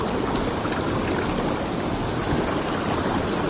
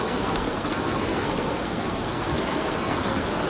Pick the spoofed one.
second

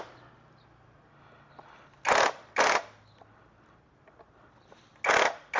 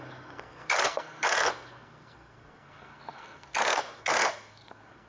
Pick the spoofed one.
second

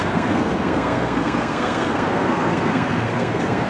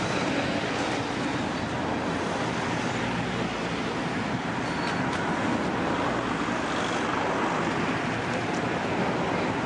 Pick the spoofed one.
first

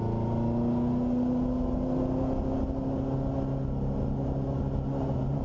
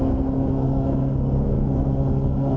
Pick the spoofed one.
second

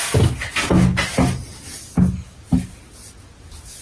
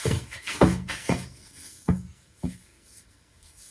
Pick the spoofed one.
second